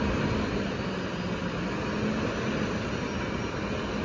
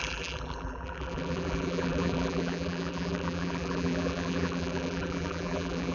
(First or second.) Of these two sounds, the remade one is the second